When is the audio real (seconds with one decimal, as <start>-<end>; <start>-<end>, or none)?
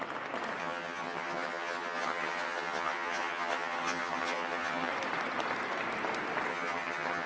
0.0-0.6; 4.9-6.5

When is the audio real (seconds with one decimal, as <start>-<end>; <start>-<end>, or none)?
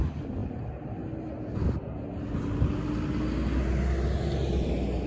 0.0-5.1